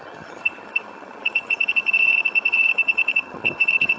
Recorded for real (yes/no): no